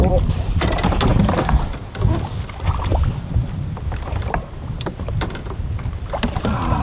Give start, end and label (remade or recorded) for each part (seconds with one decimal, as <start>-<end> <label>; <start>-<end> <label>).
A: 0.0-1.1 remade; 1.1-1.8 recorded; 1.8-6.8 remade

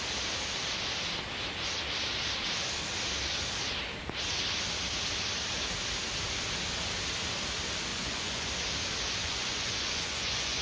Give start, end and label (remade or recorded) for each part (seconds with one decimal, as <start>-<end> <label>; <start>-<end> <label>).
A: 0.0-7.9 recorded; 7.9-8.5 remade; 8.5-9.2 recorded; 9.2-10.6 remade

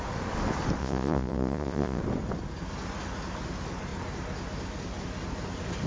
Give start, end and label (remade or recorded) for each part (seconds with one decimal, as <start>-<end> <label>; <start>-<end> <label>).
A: 0.0-0.8 recorded; 0.8-2.0 remade; 2.0-5.9 recorded